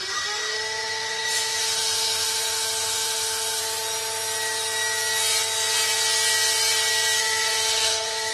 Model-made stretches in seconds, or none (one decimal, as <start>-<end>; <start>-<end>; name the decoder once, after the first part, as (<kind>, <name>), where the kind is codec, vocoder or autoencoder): 0.0-3.6 (autoencoder, DAC-VAE); 7.2-8.3